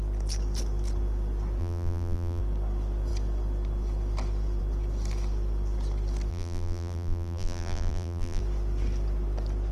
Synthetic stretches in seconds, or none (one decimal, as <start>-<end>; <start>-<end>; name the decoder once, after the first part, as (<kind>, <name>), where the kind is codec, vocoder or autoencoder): 1.6-2.4 (vocoder, BigVGAN v2); 6.3-8.4